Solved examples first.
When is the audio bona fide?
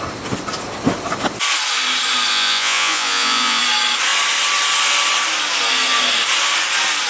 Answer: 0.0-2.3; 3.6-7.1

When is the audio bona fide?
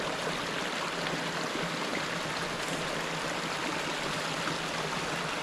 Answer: 0.0-5.4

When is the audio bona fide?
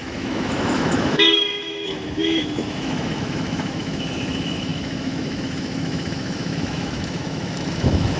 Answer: none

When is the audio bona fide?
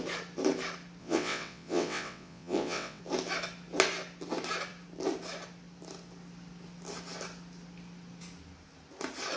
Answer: 0.0-1.0; 3.0-9.4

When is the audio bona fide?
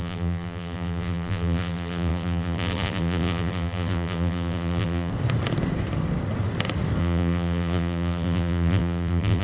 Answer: 5.1-7.0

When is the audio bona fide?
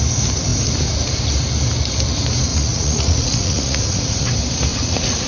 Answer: 0.0-2.5; 4.3-4.7